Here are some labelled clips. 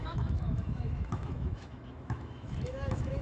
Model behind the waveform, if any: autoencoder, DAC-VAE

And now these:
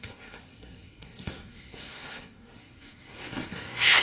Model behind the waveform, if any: codec, SNAC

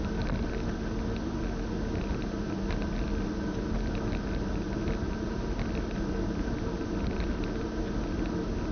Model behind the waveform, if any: none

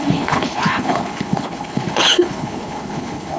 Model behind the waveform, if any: codec, HILCodec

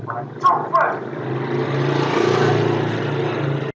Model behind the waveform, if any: none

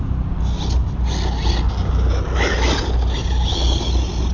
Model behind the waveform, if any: none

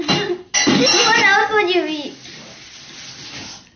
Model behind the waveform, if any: none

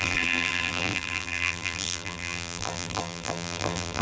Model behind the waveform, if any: vocoder, BigVGAN v2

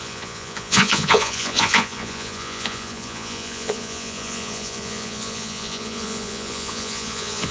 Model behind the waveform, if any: vocoder, Vocos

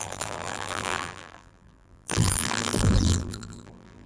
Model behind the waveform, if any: vocoder, BigVGAN v2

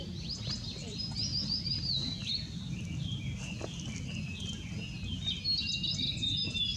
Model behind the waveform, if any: none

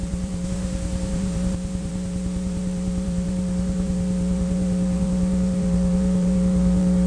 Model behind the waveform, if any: vocoder, BigVGAN v2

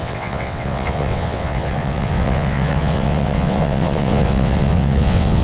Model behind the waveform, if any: vocoder, WaveNeXt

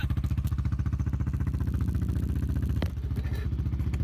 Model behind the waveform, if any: none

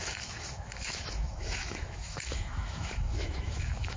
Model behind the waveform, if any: autoencoder, DAC-VAE